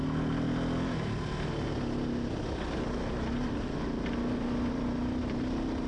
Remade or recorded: recorded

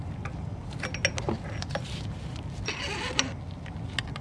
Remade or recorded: recorded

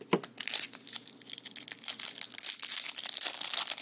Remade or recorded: recorded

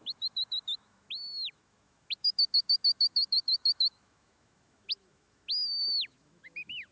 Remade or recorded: remade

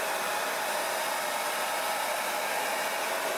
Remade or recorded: recorded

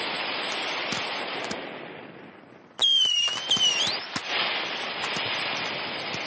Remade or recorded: recorded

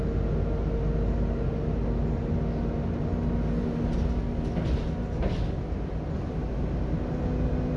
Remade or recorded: recorded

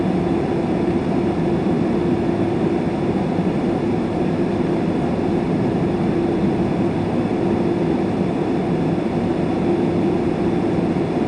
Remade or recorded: recorded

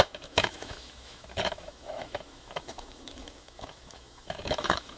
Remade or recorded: remade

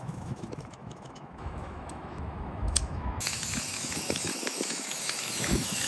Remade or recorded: remade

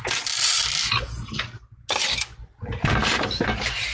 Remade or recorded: recorded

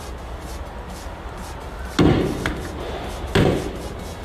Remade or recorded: recorded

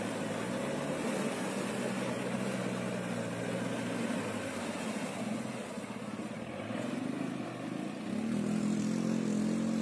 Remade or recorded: recorded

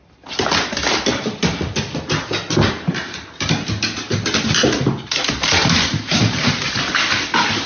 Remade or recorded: recorded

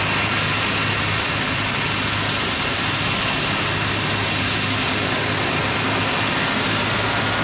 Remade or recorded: recorded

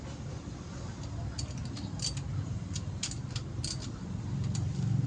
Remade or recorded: recorded